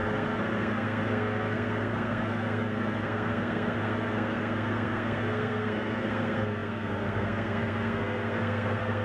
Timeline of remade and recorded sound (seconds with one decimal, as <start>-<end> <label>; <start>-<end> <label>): 0.0-9.0 remade